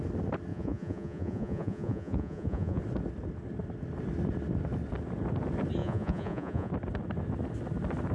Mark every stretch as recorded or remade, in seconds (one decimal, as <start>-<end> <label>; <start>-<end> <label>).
0.0-0.5 recorded; 0.5-2.8 remade; 2.8-5.8 recorded; 5.8-6.7 remade; 6.7-8.1 recorded